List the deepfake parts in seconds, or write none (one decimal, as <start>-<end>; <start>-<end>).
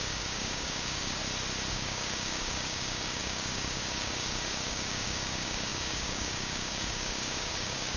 0.0-1.2; 1.7-8.0